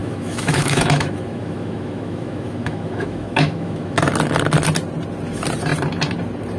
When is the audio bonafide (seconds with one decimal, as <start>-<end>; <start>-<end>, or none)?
4.0-6.6